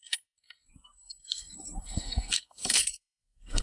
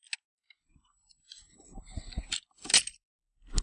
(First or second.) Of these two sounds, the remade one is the first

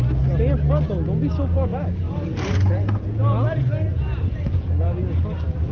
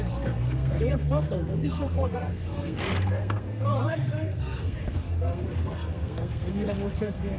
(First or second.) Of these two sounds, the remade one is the second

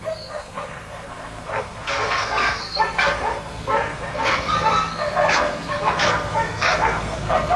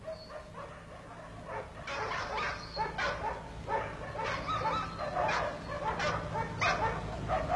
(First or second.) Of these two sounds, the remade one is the first